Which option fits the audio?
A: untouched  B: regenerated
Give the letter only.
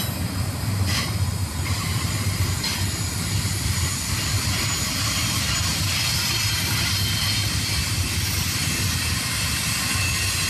A